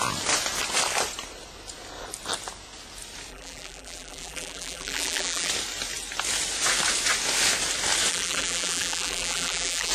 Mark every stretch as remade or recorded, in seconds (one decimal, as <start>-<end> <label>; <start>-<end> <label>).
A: 0.0-3.3 recorded; 3.3-5.5 remade; 5.5-8.1 recorded; 8.1-9.9 remade